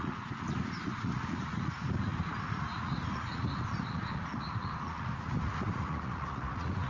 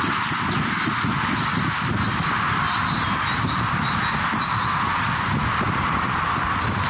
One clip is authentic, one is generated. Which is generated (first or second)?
first